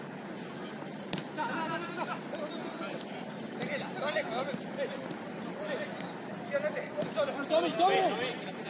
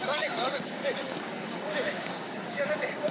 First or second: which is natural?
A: first